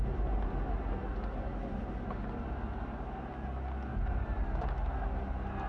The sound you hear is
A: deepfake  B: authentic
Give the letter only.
B